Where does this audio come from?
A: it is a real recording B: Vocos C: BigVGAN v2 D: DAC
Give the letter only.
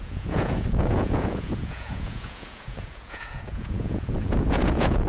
B